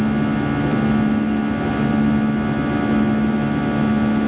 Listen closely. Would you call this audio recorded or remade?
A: recorded